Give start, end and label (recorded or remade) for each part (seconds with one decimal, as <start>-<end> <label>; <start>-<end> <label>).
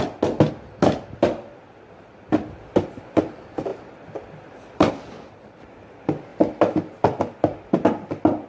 0.0-8.5 recorded